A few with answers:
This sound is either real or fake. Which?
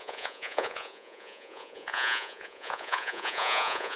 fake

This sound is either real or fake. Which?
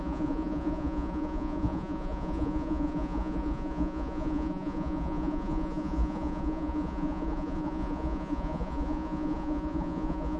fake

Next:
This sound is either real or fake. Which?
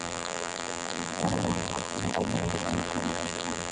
fake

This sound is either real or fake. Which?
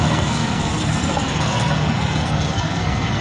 fake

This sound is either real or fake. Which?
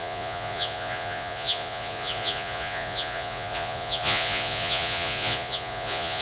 fake